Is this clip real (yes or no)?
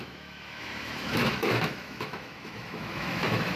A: no